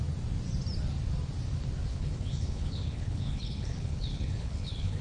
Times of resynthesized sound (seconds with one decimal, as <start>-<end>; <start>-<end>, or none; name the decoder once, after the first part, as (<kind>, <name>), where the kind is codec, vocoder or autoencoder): 1.9-5.0 (codec, HILCodec)